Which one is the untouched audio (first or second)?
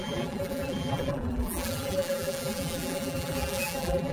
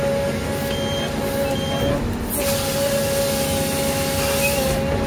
second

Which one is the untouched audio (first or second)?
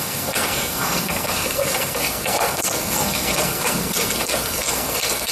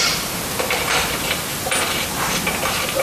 second